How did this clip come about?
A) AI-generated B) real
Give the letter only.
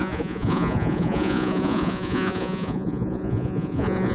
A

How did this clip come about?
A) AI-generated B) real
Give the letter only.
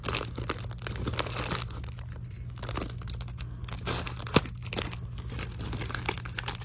B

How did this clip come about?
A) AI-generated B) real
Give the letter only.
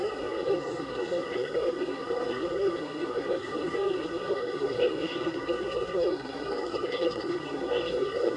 A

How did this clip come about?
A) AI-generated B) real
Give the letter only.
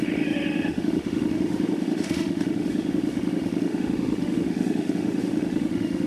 A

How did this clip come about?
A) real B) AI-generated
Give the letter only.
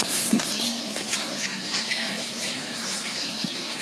B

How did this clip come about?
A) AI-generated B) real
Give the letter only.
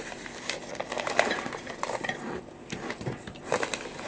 A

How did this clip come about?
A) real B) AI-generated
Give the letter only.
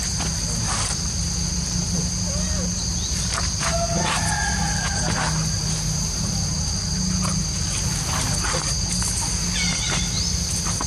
A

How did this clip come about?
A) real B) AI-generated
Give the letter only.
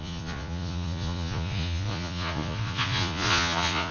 B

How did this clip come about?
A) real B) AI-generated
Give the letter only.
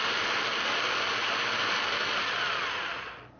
A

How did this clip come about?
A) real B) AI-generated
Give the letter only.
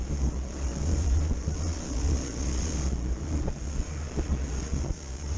B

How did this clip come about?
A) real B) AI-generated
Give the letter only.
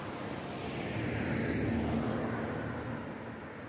A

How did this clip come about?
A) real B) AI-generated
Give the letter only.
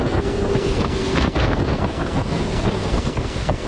B